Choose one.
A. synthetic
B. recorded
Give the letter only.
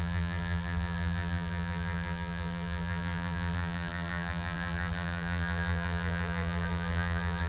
A